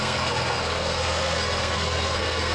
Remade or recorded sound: remade